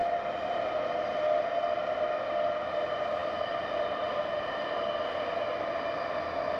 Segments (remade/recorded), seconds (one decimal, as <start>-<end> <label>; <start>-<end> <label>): 0.0-6.6 recorded

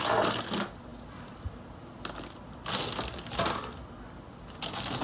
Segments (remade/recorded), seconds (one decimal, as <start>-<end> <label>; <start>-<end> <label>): 0.0-5.0 recorded

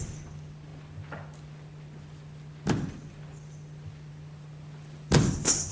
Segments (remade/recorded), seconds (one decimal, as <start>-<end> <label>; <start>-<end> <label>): 0.0-5.7 recorded

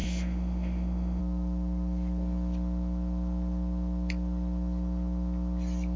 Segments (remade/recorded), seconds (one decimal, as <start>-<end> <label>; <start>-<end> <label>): 0.0-1.2 remade; 1.2-6.0 recorded

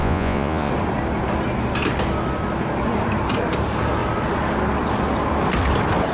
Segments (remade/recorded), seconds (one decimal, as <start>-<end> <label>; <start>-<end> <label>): 0.0-0.7 remade; 0.7-6.1 recorded

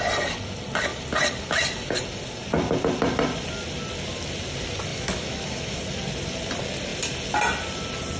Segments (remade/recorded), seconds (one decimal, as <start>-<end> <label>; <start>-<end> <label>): 0.0-4.9 recorded; 4.9-5.8 remade; 5.8-8.2 recorded

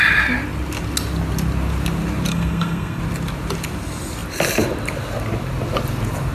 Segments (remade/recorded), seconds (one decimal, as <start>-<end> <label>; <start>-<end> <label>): 0.0-2.3 recorded; 2.3-3.0 remade; 3.0-6.3 recorded

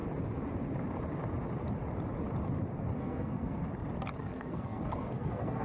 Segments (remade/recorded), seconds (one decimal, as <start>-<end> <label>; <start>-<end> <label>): 0.0-3.0 recorded; 3.0-3.6 remade; 3.6-4.2 recorded; 4.2-5.6 remade